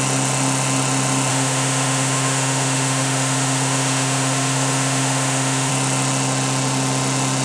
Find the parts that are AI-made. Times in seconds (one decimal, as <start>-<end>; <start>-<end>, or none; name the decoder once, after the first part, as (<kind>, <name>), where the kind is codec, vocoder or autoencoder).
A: 1.3-5.7 (autoencoder, DAC-VAE)